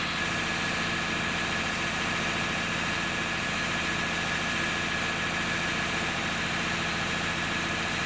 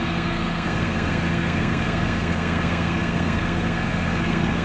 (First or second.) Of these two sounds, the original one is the first